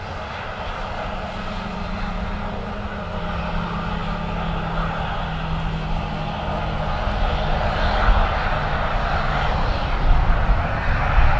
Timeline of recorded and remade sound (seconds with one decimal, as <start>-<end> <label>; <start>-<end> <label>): 0.0-11.4 recorded